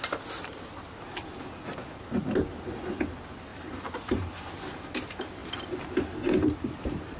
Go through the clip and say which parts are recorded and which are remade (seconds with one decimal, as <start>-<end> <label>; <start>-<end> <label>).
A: 0.0-3.5 recorded; 3.5-4.5 remade; 4.5-7.2 recorded